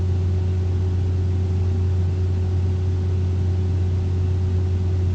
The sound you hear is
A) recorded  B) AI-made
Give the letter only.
A